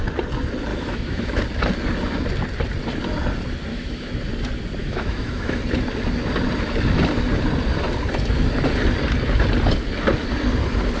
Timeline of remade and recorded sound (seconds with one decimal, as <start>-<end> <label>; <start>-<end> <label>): 0.0-0.7 recorded; 0.7-1.4 remade; 1.4-3.7 recorded; 3.7-4.2 remade; 4.2-4.8 recorded; 4.8-5.6 remade; 5.6-11.0 recorded